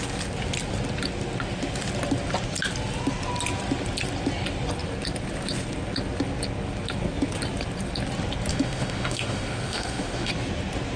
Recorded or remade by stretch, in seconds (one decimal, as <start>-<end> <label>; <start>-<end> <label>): 0.0-8.5 recorded; 8.5-10.3 remade; 10.3-11.0 recorded